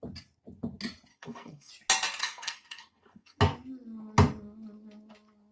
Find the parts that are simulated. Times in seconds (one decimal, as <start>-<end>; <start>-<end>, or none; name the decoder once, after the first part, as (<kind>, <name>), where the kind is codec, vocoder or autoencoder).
1.1-1.7 (codec, SNAC); 2.2-3.4